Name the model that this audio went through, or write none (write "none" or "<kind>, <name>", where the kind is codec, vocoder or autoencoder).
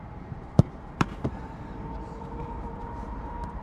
vocoder, BigVGAN v2